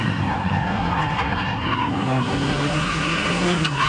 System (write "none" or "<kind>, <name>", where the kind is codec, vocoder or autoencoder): codec, SNAC